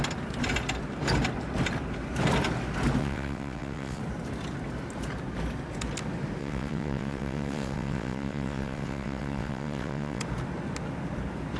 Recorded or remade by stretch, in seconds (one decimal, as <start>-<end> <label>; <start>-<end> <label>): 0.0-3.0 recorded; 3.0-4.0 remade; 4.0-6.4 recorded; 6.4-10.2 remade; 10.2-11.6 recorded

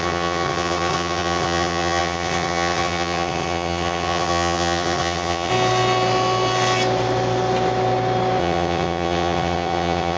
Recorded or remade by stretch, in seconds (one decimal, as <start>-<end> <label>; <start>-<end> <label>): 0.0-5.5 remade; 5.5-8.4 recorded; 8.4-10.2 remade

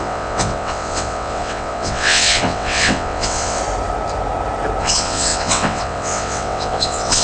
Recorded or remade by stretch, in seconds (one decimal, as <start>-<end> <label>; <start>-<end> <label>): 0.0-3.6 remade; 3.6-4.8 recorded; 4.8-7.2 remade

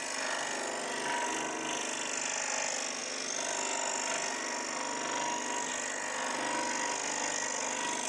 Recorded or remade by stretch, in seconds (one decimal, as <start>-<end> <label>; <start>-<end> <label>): 0.0-8.1 recorded

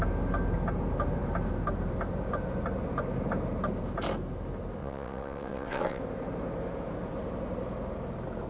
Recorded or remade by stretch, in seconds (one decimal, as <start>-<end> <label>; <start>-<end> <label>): 0.0-4.8 recorded; 4.8-6.0 remade; 6.0-8.5 recorded